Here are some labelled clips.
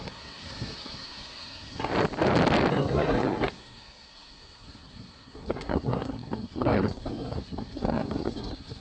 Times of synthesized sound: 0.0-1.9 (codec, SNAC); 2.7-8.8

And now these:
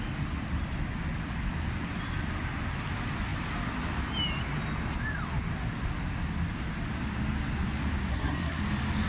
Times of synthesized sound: 8.1-8.6 (codec, SNAC)

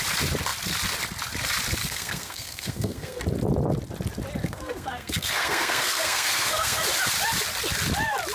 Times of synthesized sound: 1.8-3.2 (codec, SNAC); 4.4-6.8

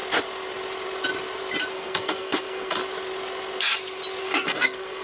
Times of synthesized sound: 1.7-2.8 (codec, SNAC); 4.2-5.0

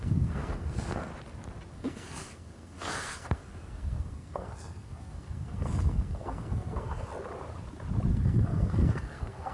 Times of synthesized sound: 0.0-1.1 (codec, SNAC); 1.7-7.1; 8.1-9.5

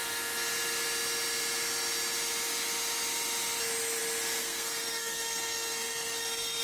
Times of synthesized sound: 4.4-6.6 (codec, SNAC)

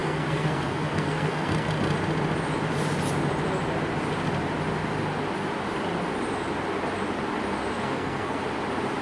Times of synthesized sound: 0.0-1.7 (codec, SNAC); 7.8-8.4